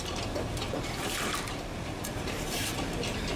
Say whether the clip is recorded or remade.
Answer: remade